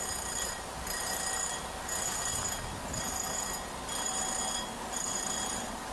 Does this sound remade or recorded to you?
recorded